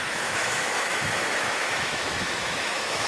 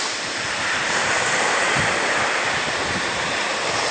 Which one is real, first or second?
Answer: second